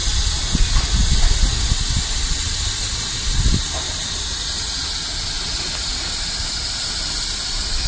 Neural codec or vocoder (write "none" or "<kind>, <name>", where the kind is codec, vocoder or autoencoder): none